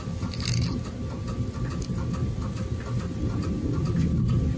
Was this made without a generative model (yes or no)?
yes